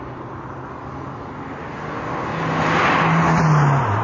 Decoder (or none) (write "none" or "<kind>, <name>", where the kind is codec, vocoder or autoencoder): none